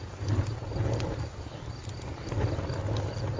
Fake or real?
real